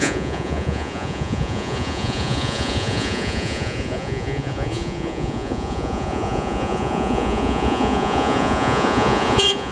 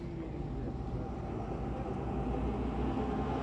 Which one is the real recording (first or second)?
second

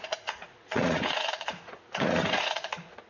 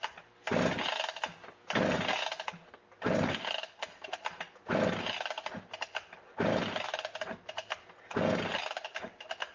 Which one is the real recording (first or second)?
second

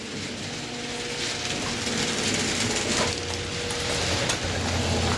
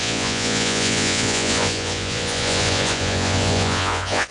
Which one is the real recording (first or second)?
first